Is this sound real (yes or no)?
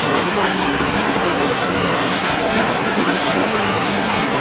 no